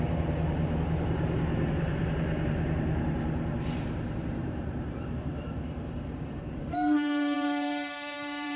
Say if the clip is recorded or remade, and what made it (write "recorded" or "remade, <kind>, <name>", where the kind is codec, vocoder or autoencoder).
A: remade, vocoder, BigVGAN v2